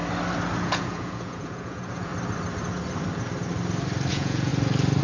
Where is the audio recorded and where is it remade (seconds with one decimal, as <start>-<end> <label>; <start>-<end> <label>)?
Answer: 0.0-0.6 recorded; 0.6-2.1 remade; 2.1-4.1 recorded; 4.1-4.5 remade; 4.5-5.0 recorded